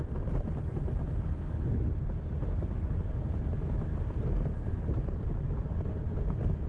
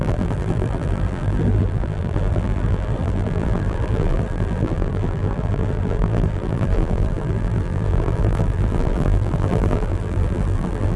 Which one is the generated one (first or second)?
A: second